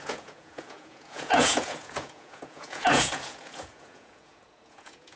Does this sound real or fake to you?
fake